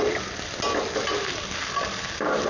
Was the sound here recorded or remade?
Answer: recorded